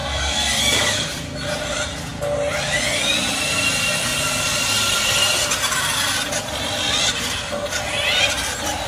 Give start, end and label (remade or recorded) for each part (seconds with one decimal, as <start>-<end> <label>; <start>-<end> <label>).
0.0-0.6 remade; 0.6-8.9 recorded